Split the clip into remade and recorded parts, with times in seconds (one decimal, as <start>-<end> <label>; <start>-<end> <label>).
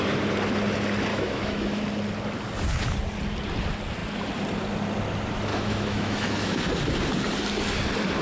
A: 0.0-1.1 recorded; 1.1-1.8 remade; 1.8-5.5 recorded; 5.5-6.6 remade; 6.6-8.2 recorded